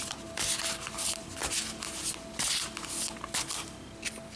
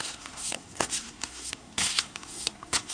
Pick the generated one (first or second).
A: second